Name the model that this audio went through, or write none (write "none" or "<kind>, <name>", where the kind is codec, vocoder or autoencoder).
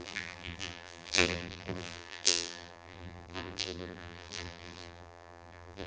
vocoder, BigVGAN v2